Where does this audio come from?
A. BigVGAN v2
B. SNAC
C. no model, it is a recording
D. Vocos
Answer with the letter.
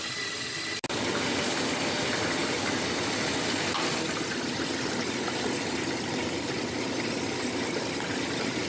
C